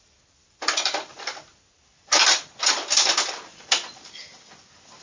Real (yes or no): yes